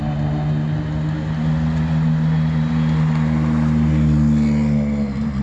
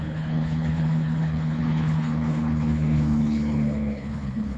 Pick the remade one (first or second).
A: second